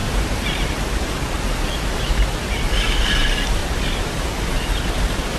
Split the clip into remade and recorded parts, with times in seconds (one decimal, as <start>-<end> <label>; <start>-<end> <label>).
0.0-2.1 remade; 2.1-3.6 recorded; 3.6-5.4 remade

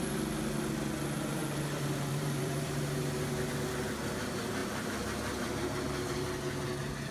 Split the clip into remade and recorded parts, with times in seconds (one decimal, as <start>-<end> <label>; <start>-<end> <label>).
0.0-1.4 recorded; 1.4-2.8 remade; 2.8-4.6 recorded; 4.6-5.5 remade; 5.5-7.1 recorded

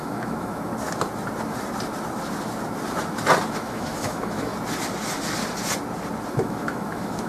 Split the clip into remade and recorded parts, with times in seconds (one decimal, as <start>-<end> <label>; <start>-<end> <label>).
0.0-0.7 remade; 0.7-3.5 recorded; 3.5-4.5 remade; 4.5-6.3 recorded; 6.3-7.3 remade